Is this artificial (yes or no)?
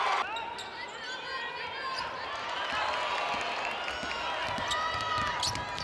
no